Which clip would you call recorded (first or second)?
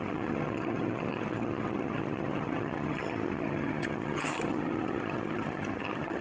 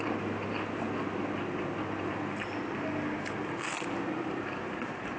second